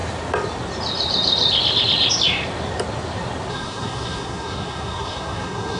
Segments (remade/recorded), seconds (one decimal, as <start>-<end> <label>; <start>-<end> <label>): 0.0-3.5 recorded; 3.5-5.8 remade